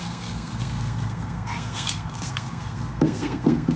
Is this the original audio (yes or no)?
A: no